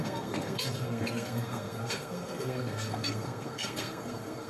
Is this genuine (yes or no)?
no